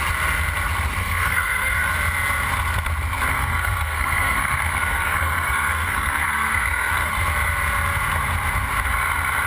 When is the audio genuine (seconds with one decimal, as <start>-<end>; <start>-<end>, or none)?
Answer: 0.0-1.0; 1.9-3.3; 7.1-9.5